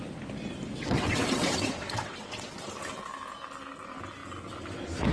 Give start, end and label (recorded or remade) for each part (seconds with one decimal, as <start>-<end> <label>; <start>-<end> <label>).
0.0-0.8 recorded; 0.8-2.5 remade; 2.5-5.1 recorded